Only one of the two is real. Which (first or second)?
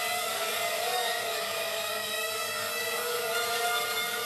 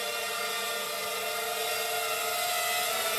second